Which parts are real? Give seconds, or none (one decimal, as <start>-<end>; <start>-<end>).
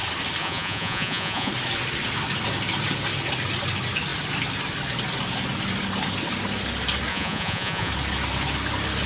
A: 0.0-0.4; 1.5-7.1; 7.9-9.1